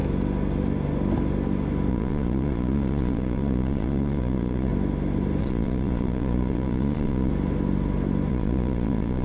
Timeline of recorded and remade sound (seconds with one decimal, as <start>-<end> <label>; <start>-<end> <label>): 0.0-1.9 recorded; 1.9-4.7 remade; 4.7-5.4 recorded; 5.4-7.3 remade; 7.3-8.3 recorded; 8.3-9.2 remade

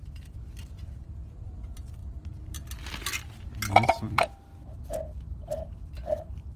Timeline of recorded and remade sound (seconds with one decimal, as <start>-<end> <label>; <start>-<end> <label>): 0.0-2.0 remade; 2.0-3.7 recorded; 3.7-4.5 remade; 4.5-5.0 recorded; 5.0-6.6 remade

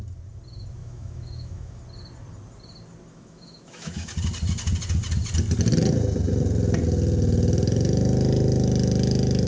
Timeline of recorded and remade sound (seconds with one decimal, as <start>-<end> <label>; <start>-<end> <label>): 0.0-0.8 recorded; 0.8-1.8 remade; 1.8-3.1 recorded; 3.1-4.1 remade; 4.1-9.5 recorded

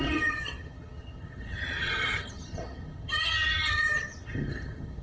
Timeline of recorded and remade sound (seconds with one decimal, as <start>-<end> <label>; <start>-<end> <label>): 0.0-5.0 remade

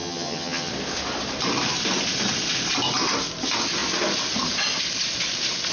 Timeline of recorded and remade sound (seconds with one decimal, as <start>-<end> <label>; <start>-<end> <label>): 0.0-0.7 remade; 0.7-5.7 recorded

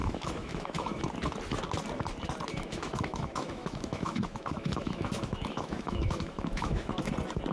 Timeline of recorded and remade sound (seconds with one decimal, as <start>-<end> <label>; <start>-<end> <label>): 0.0-1.0 remade; 1.0-2.6 recorded; 2.6-7.1 remade; 7.1-7.5 recorded

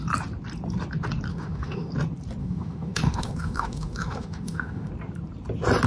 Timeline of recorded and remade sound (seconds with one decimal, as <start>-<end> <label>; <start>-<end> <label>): 0.0-1.3 recorded; 1.3-1.9 remade; 1.9-2.4 recorded; 2.4-4.9 remade; 4.9-5.9 recorded